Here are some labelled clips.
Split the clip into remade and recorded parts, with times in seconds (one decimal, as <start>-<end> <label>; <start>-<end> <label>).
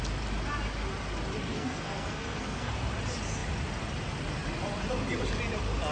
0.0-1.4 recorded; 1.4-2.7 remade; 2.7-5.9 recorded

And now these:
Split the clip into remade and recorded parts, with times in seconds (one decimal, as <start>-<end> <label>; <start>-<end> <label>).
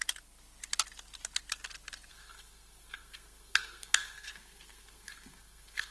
0.0-2.1 recorded; 2.1-5.9 remade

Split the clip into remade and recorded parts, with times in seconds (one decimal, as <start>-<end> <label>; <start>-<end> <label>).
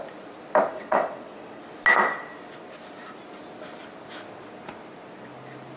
0.0-0.7 recorded; 0.7-1.6 remade; 1.6-5.8 recorded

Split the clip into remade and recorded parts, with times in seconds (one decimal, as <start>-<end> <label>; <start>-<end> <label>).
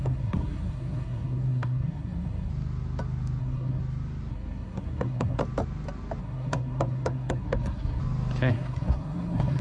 0.0-2.5 remade; 2.5-3.4 recorded; 3.4-3.8 remade; 3.8-4.3 recorded; 4.3-5.4 remade; 5.4-6.2 recorded; 6.2-8.0 remade; 8.0-8.5 recorded; 8.5-9.6 remade